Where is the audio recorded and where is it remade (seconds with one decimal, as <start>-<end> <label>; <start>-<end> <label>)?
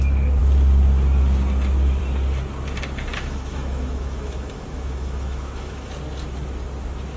0.0-3.1 recorded; 3.1-5.9 remade; 5.9-7.2 recorded